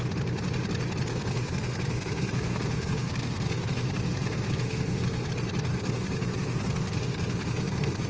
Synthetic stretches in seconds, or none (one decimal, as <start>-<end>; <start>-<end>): 1.1-5.3; 5.7-8.1